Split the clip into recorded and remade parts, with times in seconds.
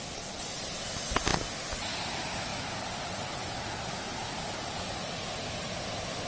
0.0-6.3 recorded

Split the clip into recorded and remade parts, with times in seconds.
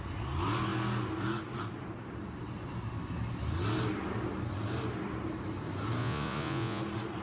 0.0-6.0 recorded; 6.0-6.8 remade; 6.8-7.2 recorded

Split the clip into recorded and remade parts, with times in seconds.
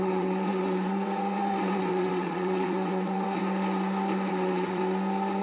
0.0-3.4 remade; 3.4-4.3 recorded; 4.3-4.8 remade; 4.8-5.4 recorded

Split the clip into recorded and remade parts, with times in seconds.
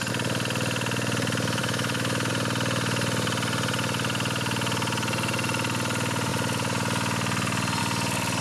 0.0-1.6 recorded; 1.6-2.3 remade; 2.3-8.4 recorded